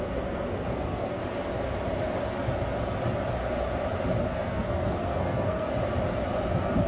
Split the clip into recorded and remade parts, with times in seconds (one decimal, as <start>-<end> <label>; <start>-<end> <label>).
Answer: 0.0-1.2 remade; 1.2-4.2 recorded; 4.2-5.7 remade; 5.7-6.5 recorded; 6.5-6.9 remade